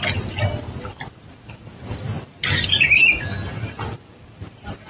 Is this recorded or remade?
remade